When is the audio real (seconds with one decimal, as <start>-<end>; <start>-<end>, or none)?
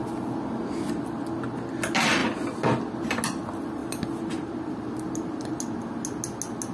0.0-6.7